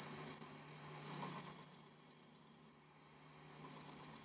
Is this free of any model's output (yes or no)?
yes